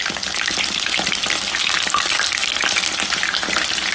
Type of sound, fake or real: real